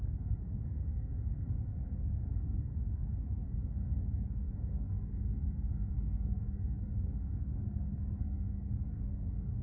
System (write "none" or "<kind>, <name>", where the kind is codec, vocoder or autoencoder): codec, SNAC